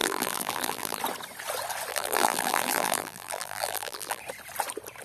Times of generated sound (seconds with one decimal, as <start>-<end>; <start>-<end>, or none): 0.0-1.0; 1.9-4.2